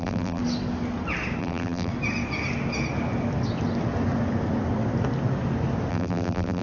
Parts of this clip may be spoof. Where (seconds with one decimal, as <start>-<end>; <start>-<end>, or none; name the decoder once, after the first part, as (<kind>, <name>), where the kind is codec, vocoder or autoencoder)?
0.0-0.4 (vocoder, BigVGAN v2); 1.4-1.9; 5.9-6.6